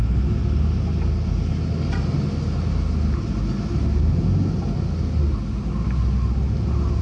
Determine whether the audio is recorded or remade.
recorded